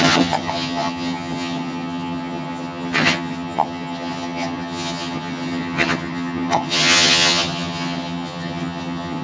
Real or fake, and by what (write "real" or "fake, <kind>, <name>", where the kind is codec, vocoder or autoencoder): fake, vocoder, HiFi-GAN